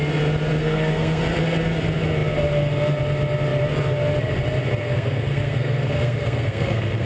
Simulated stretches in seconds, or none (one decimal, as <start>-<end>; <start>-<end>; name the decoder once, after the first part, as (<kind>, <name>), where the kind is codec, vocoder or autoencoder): 0.6-1.2 (codec, SNAC); 4.8-7.1